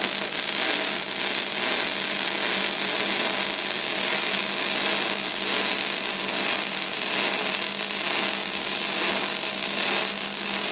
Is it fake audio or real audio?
real